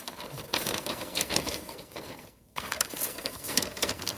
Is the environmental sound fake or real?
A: fake